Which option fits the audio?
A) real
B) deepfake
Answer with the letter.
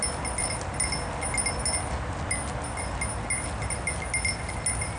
A